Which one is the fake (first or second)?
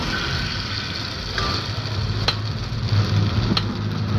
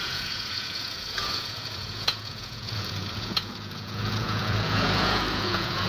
second